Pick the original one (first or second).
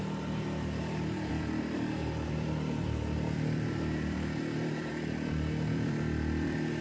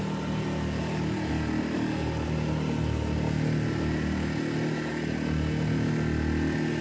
second